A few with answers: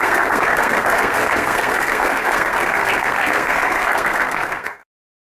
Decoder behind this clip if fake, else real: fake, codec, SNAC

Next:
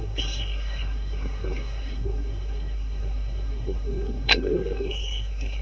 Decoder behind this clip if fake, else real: fake, codec, SNAC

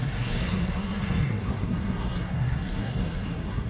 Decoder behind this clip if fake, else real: fake, codec, SNAC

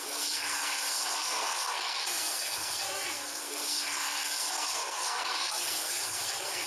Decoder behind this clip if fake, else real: fake, codec, SNAC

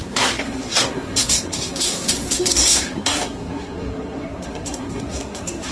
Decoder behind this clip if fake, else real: fake, codec, SNAC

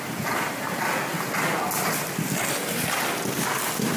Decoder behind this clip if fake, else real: real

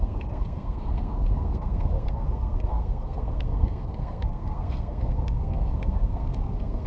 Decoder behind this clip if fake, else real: fake, codec, SNAC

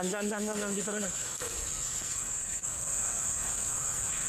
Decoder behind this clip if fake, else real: fake, codec, SNAC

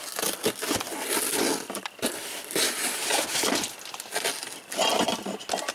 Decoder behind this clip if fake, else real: real